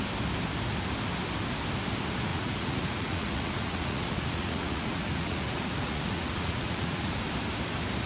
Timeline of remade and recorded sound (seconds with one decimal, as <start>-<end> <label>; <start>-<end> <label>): 0.0-2.3 recorded; 2.3-7.2 remade; 7.2-8.1 recorded